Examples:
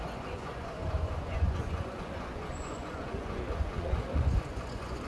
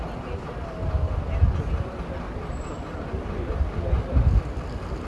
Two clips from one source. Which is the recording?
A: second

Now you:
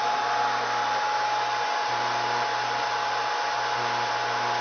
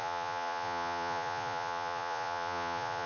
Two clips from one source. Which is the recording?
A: first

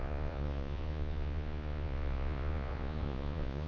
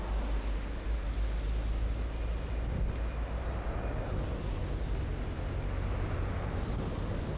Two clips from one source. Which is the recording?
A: second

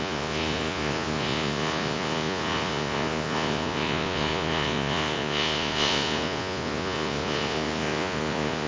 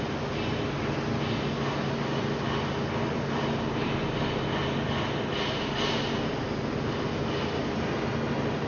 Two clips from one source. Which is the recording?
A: second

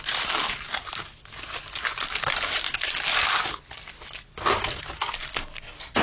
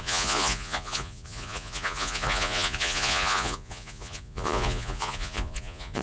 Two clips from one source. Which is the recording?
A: first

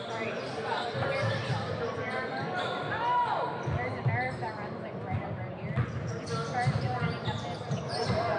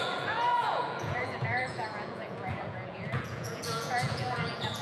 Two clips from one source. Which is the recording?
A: first